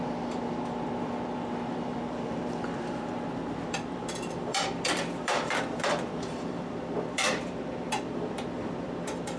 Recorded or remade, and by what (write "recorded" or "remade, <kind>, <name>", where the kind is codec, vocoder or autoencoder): remade, vocoder, BigVGAN v2